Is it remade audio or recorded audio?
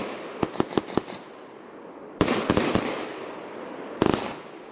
recorded